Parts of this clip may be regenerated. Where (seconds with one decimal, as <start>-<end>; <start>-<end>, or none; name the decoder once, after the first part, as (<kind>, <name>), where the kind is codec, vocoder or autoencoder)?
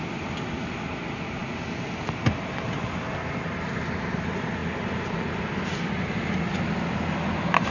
none